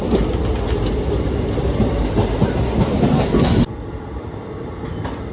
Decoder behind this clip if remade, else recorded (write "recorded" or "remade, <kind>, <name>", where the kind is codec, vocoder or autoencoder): recorded